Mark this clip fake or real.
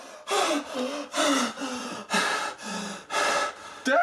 real